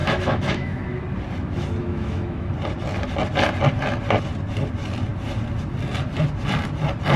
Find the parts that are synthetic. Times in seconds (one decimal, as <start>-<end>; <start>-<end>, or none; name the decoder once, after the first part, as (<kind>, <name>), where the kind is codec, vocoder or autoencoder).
0.0-1.0 (autoencoder, DAC-VAE); 1.8-2.5